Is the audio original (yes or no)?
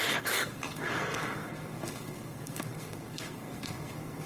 no